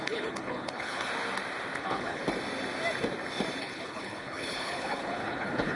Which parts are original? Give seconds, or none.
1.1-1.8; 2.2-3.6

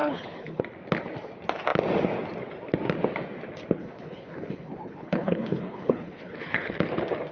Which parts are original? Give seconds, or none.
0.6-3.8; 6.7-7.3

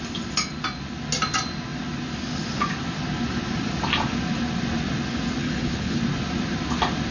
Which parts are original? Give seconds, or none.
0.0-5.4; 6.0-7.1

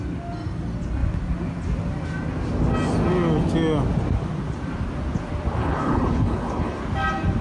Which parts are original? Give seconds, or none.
0.0-5.6; 6.8-7.4

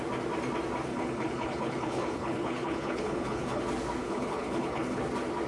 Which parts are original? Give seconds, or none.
0.0-0.9; 3.6-4.0; 5.0-5.5

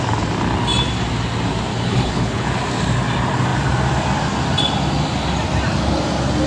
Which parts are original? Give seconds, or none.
0.0-1.7; 2.5-6.5